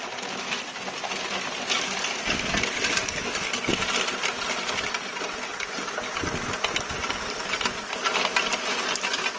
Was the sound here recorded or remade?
recorded